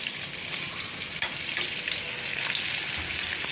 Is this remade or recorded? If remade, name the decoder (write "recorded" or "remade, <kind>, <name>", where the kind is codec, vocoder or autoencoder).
recorded